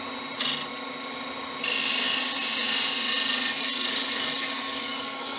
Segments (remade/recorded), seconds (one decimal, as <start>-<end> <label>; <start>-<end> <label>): 0.0-3.9 recorded; 3.9-5.4 remade